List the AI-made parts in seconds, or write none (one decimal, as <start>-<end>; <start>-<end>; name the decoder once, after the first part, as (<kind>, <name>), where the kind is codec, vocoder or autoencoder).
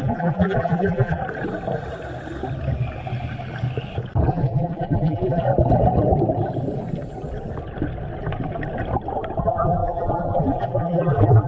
0.0-1.2 (vocoder, BigVGAN v2); 4.3-5.5; 9.4-11.5